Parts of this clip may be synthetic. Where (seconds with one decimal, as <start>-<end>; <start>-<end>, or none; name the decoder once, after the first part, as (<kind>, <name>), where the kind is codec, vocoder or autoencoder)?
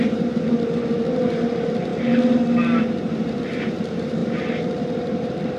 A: 0.0-1.9 (vocoder, BigVGAN v2); 2.8-5.6